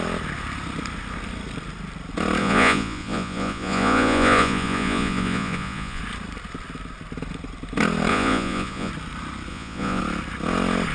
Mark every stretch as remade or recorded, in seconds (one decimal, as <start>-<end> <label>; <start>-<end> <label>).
0.0-2.4 recorded; 2.4-6.0 remade; 6.0-8.1 recorded; 8.1-8.9 remade; 8.9-9.5 recorded; 9.5-10.0 remade; 10.0-10.9 recorded